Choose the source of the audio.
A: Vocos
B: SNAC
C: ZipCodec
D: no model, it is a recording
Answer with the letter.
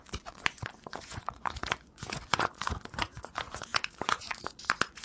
A